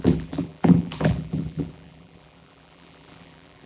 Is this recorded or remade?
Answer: remade